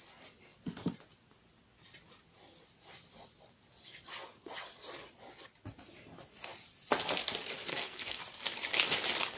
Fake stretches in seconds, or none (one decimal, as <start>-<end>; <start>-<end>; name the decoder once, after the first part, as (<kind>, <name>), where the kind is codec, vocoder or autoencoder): 7.7-8.2 (codec, SNAC)